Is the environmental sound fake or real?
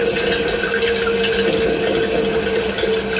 real